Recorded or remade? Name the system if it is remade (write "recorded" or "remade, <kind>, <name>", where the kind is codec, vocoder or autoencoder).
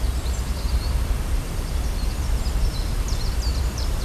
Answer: remade, vocoder, BigVGAN v2